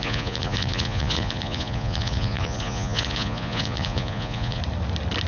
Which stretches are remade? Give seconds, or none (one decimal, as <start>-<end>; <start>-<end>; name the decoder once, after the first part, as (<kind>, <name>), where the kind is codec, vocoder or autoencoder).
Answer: 0.0-4.6 (vocoder, Vocos)